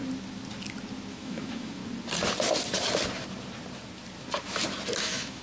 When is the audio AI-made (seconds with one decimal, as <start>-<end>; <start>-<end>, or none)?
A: 1.1-1.8; 5.0-5.4